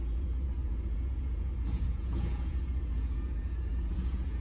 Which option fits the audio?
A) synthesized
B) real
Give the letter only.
A